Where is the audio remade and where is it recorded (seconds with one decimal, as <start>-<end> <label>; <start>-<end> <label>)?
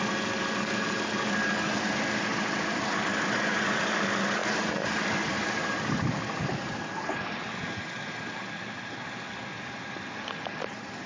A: 0.0-11.1 recorded